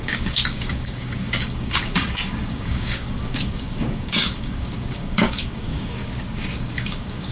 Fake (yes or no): yes